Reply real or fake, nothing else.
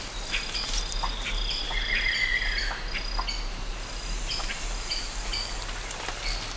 real